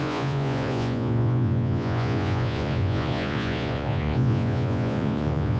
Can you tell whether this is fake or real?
fake